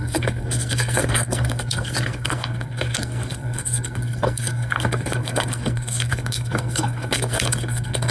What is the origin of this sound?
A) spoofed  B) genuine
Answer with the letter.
A